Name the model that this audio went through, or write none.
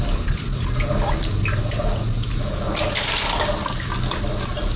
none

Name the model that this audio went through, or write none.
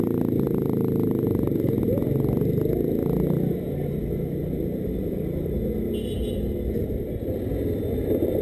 none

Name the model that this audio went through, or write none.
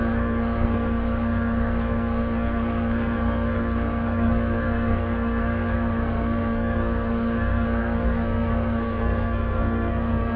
codec, SNAC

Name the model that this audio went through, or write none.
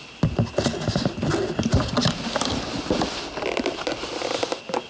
none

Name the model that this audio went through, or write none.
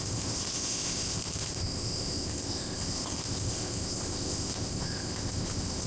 codec, ZipCodec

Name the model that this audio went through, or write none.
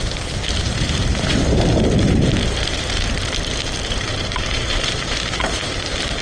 vocoder, BigVGAN v2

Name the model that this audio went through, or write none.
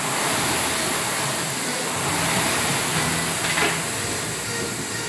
none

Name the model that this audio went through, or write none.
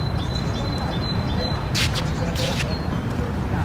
none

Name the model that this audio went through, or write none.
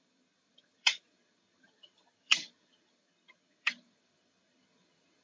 vocoder, HiFi-GAN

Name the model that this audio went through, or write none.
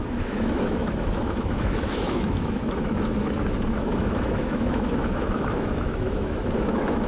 autoencoder, DAC-VAE